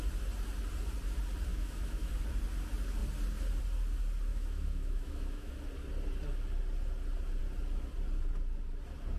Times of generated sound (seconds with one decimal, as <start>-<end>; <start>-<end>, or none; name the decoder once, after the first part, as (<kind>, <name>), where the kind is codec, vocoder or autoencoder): 1.5-2.1 (autoencoder, DAC-VAE); 4.3-5.5